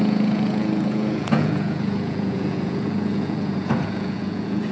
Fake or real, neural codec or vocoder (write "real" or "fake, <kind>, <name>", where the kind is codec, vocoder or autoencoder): fake, vocoder, Vocos